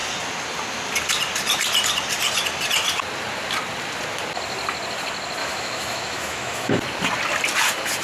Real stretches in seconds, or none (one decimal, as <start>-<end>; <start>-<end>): 0.0-5.4; 6.7-8.0

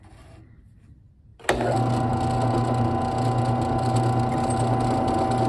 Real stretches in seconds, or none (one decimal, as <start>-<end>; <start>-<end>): 0.0-5.5